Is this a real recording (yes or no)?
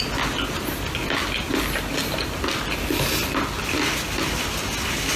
yes